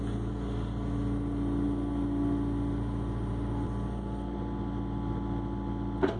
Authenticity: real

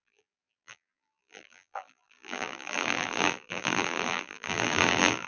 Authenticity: fake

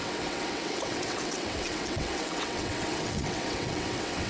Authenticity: fake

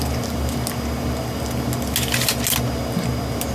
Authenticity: real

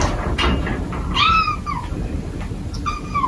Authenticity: real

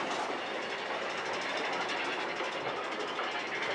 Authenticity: real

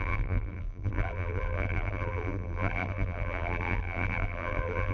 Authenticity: fake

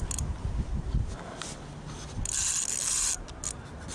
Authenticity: real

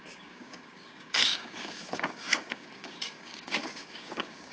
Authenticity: fake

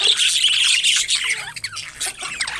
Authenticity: real